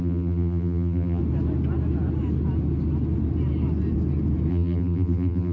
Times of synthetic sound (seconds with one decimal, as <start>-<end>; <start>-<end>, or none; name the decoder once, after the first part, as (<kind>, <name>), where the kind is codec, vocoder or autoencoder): 0.0-1.2 (vocoder, BigVGAN v2); 4.5-5.5